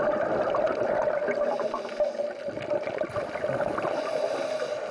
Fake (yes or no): no